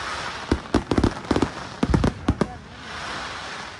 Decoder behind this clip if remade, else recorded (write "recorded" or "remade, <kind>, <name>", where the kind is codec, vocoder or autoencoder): recorded